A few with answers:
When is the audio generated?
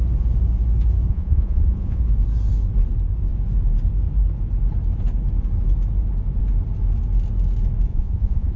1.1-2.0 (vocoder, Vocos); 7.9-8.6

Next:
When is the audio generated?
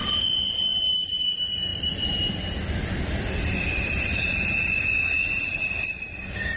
0.9-6.6 (vocoder, BigVGAN v2)